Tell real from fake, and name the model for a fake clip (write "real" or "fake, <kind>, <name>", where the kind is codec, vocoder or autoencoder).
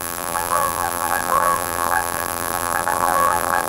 fake, vocoder, BigVGAN v2